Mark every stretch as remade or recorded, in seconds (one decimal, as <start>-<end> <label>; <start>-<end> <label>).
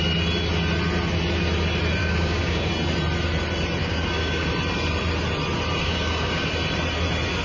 0.0-2.0 recorded; 2.0-2.7 remade; 2.7-3.8 recorded; 3.8-4.5 remade; 4.5-5.8 recorded; 5.8-6.5 remade; 6.5-7.4 recorded